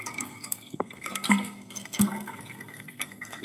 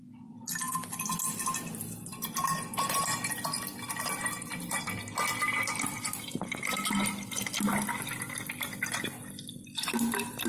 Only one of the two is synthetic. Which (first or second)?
first